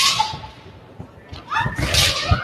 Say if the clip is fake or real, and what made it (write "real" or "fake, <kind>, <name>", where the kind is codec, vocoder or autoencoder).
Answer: real